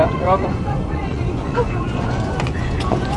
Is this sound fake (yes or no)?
yes